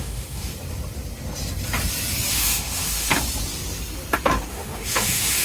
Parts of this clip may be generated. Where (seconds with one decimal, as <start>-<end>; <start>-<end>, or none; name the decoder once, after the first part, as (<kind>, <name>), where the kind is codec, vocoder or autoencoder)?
0.0-0.5 (autoencoder, DAC-VAE); 2.3-3.1; 4.5-5.4